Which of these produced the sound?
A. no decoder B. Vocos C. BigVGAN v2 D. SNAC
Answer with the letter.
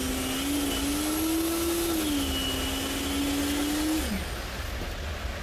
A